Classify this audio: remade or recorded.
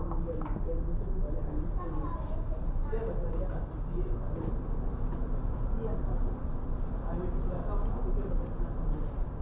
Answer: recorded